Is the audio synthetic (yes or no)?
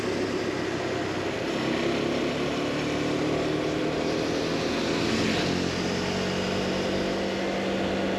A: no